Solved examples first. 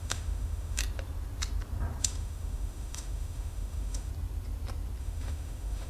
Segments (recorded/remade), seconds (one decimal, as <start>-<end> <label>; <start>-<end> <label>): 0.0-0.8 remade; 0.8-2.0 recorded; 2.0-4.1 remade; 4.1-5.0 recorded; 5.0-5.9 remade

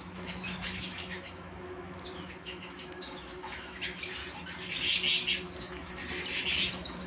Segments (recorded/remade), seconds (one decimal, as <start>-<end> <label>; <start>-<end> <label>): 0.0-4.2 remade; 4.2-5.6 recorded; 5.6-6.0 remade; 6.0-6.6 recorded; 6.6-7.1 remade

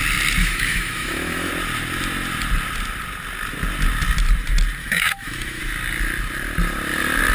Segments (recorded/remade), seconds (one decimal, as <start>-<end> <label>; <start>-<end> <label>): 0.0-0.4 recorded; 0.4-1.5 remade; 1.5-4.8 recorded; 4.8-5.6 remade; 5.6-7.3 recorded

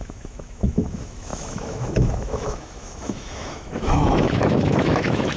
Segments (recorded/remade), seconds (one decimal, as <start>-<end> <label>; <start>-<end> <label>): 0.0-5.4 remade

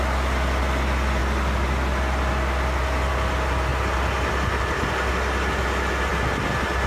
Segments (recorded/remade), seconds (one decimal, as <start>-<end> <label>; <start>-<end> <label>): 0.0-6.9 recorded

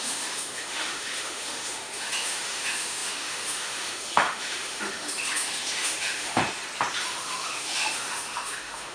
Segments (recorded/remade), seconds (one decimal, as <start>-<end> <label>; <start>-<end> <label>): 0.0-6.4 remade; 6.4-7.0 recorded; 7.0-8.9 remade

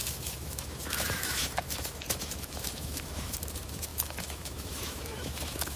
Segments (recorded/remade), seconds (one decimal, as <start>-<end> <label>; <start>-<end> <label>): 0.0-5.8 remade